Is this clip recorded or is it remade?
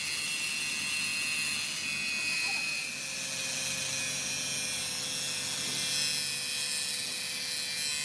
recorded